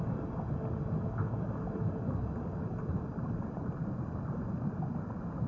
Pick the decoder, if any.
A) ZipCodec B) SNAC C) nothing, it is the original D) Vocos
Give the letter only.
C